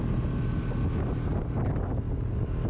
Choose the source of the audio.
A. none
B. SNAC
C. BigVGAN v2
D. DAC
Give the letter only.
A